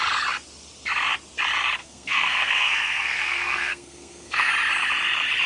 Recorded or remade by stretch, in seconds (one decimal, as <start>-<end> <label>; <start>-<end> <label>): 0.0-1.8 recorded; 1.8-4.5 remade; 4.5-5.5 recorded